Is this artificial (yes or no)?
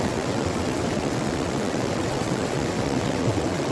yes